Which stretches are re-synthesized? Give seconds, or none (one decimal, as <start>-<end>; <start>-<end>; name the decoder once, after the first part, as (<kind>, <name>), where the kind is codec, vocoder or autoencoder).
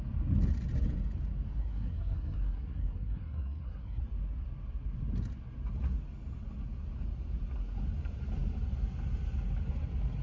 1.6-4.0 (codec, SNAC)